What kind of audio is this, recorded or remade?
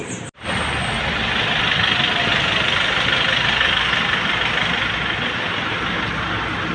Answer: recorded